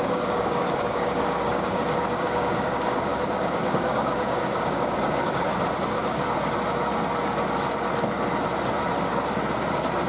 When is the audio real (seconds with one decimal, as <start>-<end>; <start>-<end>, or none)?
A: 5.5-10.1